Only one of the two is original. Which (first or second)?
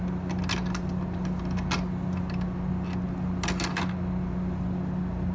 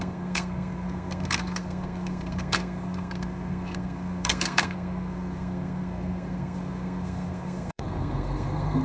first